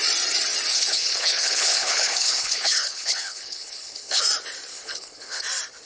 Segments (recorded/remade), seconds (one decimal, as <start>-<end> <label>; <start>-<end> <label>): 0.0-0.7 recorded; 0.7-4.2 remade; 4.2-4.7 recorded; 4.7-5.4 remade; 5.4-5.9 recorded